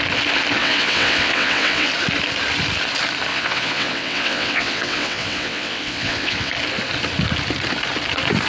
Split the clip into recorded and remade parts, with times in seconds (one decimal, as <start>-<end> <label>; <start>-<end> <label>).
0.0-0.6 recorded; 0.6-1.9 remade; 1.9-3.3 recorded; 3.3-6.5 remade; 6.5-8.5 recorded

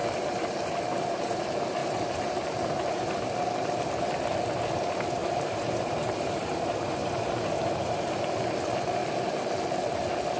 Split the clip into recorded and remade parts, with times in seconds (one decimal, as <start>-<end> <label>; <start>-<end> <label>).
0.0-1.4 remade; 1.4-1.8 recorded; 1.8-3.1 remade; 3.1-5.2 recorded; 5.2-8.3 remade; 8.3-10.4 recorded

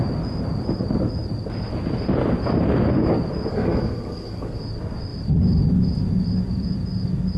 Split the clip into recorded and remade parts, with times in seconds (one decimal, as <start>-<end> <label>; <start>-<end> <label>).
0.0-3.5 recorded; 3.5-4.6 remade; 4.6-7.4 recorded

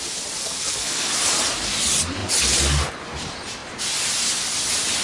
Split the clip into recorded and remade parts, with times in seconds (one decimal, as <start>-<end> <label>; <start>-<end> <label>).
0.0-0.4 recorded; 0.4-1.1 remade; 1.1-5.0 recorded